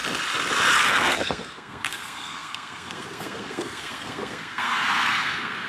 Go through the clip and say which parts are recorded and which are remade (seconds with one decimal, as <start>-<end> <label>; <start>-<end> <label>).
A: 0.0-0.8 recorded; 0.8-5.7 remade